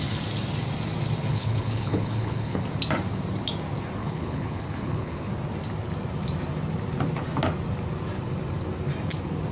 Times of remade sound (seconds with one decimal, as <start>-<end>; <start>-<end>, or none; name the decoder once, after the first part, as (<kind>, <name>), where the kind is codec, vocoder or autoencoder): 1.3-2.6 (codec, HILCodec); 4.0-5.3